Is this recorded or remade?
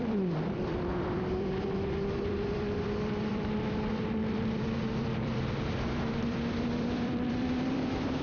remade